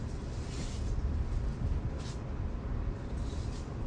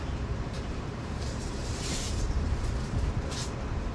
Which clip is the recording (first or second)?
first